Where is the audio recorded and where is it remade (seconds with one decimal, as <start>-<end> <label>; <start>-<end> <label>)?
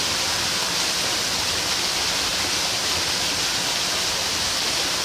0.0-2.3 recorded; 2.3-2.9 remade; 2.9-3.9 recorded; 3.9-4.4 remade; 4.4-5.0 recorded